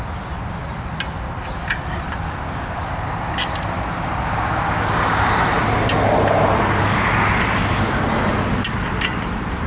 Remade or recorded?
recorded